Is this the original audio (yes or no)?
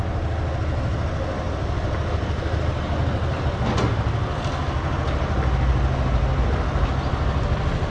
yes